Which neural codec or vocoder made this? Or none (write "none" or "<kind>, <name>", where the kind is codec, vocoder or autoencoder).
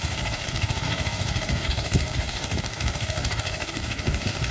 codec, DAC